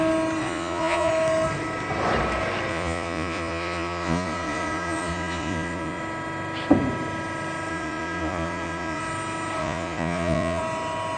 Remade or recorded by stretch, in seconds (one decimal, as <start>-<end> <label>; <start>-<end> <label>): 0.0-0.4 recorded; 0.4-1.1 remade; 1.1-2.7 recorded; 2.7-6.0 remade; 6.0-7.7 recorded; 7.7-9.0 remade; 9.0-9.6 recorded; 9.6-10.6 remade; 10.6-11.2 recorded